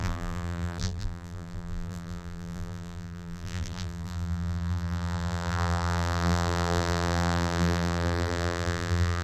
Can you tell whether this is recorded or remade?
remade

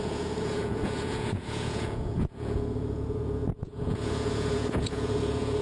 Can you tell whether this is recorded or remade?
remade